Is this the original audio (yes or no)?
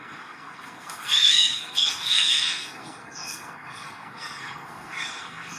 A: no